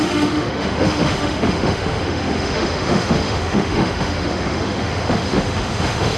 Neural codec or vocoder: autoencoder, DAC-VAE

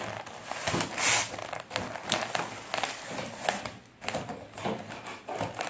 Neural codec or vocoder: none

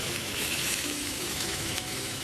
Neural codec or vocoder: autoencoder, DAC-VAE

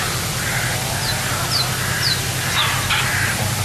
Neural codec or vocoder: none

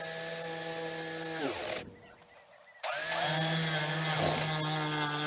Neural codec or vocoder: none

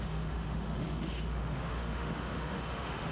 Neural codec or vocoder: autoencoder, DAC-VAE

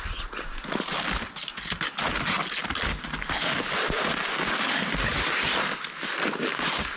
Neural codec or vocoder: none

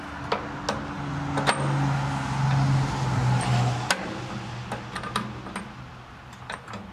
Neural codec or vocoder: none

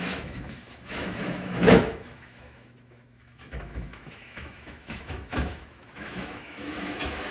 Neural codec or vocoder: autoencoder, DAC-VAE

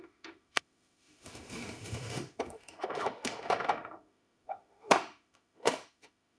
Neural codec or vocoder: autoencoder, DAC-VAE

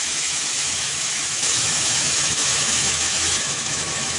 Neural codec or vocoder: autoencoder, DAC-VAE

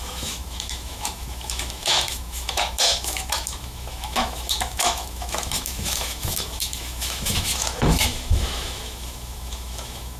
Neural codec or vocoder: autoencoder, DAC-VAE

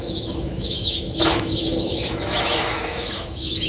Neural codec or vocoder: autoencoder, DAC-VAE